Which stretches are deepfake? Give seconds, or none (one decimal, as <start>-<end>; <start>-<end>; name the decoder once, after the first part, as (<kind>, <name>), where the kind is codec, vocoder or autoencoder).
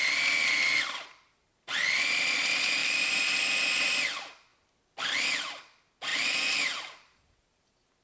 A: 2.8-3.4 (vocoder, BigVGAN v2); 6.1-7.6